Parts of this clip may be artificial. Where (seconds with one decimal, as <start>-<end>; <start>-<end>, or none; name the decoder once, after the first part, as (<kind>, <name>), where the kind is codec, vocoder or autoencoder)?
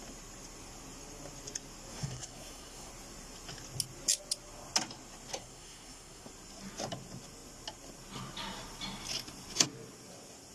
1.9-2.9 (codec, SNAC); 5.4-6.3